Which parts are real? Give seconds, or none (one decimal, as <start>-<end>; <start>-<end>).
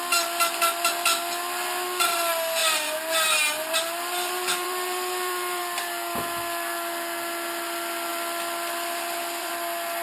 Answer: 0.0-2.6; 5.6-8.1; 9.5-10.0